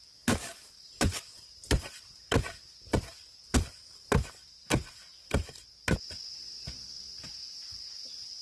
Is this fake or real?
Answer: real